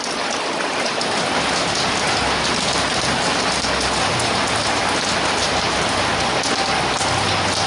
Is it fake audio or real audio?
real